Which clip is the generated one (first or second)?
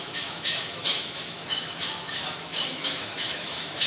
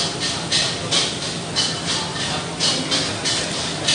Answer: first